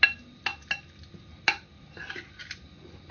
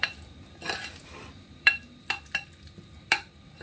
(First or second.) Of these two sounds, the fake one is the second